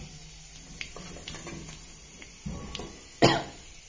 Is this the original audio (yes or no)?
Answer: yes